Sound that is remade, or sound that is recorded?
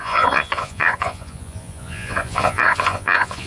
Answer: remade